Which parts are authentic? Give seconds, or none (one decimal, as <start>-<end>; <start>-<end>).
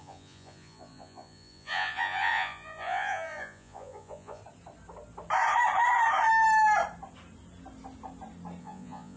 4.4-8.6